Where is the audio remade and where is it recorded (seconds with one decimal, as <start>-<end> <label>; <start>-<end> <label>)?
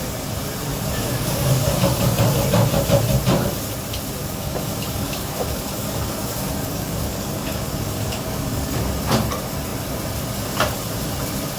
0.0-0.7 recorded; 0.7-2.2 remade; 2.2-4.2 recorded; 4.2-8.8 remade; 8.8-11.6 recorded